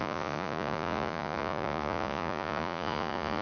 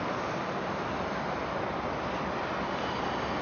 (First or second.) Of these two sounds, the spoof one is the first